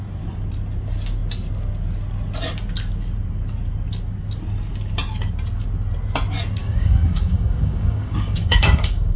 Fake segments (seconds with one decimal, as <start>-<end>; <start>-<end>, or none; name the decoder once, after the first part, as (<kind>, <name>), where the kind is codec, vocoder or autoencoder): 6.6-9.2 (codec, DAC)